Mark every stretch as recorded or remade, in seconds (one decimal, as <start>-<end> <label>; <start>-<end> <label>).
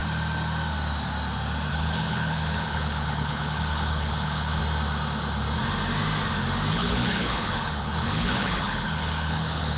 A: 0.0-1.7 recorded; 1.7-4.6 remade; 4.6-6.7 recorded; 6.7-9.8 remade